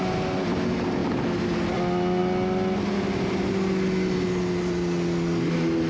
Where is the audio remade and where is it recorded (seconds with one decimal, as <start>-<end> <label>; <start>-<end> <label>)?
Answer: 0.0-5.9 recorded